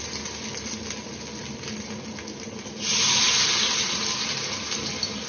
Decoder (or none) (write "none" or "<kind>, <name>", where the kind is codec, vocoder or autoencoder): none